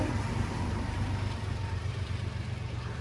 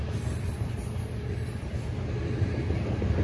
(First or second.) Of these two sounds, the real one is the second